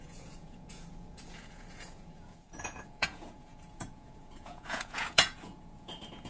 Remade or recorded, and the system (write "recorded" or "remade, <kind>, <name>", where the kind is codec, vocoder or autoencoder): remade, vocoder, Vocos